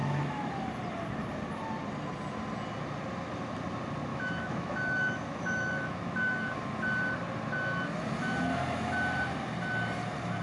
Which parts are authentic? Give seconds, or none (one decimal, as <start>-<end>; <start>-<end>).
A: 0.5-4.1; 6.5-10.4